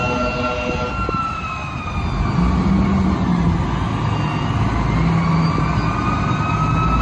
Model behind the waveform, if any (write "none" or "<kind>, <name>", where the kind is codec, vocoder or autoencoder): none